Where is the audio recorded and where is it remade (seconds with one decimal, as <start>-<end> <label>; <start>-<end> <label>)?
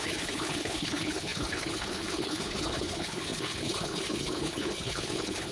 0.0-5.5 remade